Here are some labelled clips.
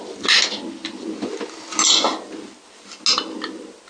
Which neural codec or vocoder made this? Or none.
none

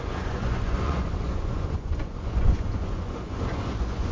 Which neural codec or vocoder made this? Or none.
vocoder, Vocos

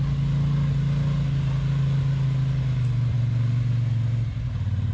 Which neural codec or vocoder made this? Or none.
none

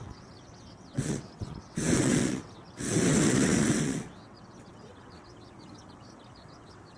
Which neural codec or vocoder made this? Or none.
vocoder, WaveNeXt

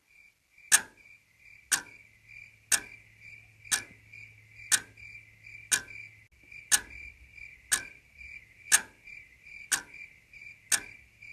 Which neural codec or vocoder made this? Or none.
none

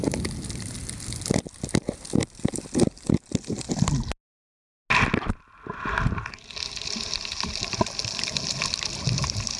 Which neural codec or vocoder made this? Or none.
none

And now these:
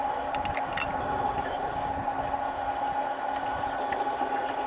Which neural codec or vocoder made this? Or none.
none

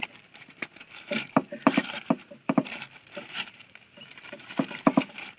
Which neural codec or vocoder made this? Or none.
vocoder, BigVGAN v2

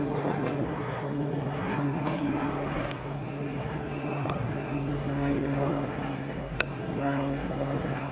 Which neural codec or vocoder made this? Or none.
codec, SNAC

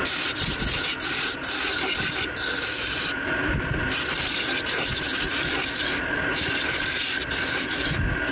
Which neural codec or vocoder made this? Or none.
none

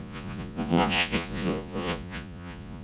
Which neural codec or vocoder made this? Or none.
vocoder, Vocos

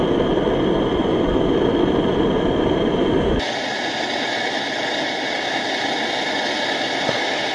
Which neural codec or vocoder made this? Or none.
none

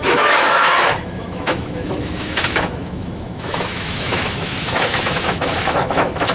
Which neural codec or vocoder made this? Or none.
autoencoder, DAC-VAE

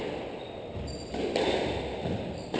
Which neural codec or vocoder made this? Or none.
none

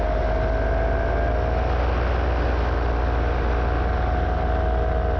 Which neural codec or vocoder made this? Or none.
none